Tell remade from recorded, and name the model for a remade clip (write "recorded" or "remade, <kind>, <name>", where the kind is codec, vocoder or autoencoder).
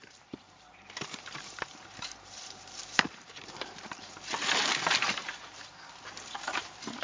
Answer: remade, vocoder, BigVGAN v2